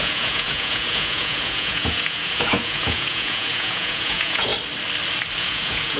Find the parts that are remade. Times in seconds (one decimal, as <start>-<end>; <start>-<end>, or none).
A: 0.0-4.5; 5.4-6.0